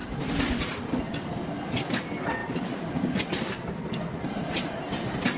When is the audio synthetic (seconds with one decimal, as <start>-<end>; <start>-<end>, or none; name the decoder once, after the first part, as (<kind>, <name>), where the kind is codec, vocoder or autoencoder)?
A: none